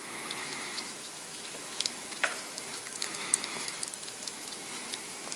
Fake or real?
fake